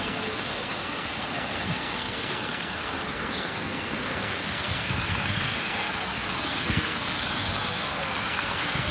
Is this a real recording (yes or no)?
no